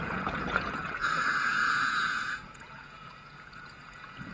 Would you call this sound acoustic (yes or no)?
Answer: no